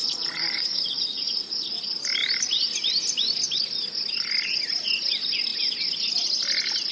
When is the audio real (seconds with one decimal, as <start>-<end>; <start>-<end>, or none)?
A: 1.8-6.9